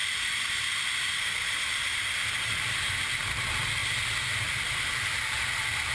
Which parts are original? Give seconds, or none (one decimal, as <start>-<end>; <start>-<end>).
0.0-5.9